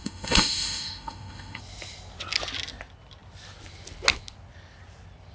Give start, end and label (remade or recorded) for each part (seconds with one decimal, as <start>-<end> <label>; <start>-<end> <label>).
0.0-1.6 remade; 1.6-5.3 recorded